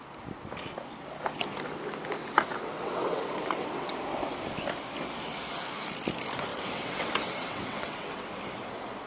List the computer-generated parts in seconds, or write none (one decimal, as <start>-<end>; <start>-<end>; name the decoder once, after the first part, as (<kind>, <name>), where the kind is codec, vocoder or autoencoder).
2.2-3.9 (vocoder, WaveNeXt); 6.5-8.3